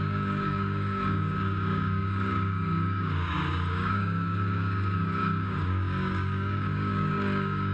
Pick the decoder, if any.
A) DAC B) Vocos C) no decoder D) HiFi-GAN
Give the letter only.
A